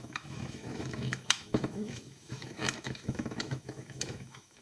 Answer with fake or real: fake